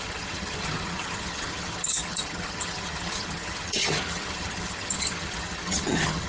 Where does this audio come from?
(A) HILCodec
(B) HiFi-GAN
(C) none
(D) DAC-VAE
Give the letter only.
B